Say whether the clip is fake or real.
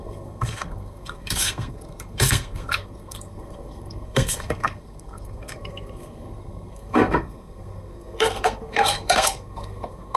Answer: fake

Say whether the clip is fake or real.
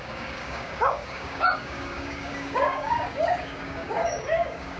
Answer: fake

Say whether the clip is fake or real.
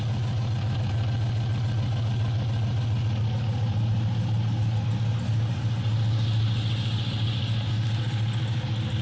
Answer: real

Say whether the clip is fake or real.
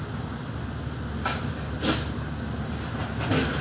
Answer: real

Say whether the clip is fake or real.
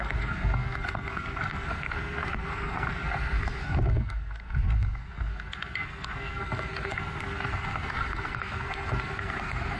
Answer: fake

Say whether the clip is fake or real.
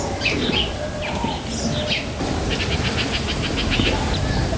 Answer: real